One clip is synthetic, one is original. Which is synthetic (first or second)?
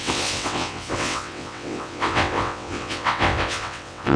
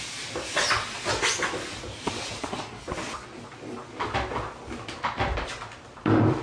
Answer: first